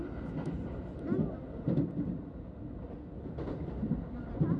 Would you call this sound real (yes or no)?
yes